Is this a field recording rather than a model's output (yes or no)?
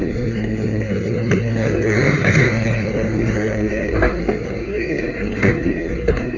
no